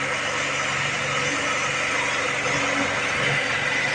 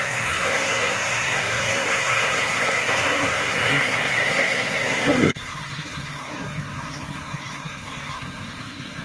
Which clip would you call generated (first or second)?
second